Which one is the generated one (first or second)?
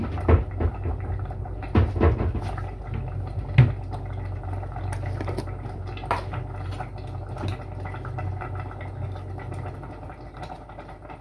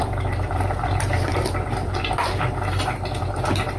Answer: second